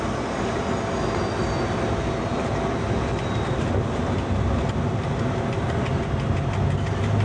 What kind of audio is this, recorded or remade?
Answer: recorded